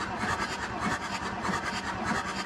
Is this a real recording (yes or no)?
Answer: yes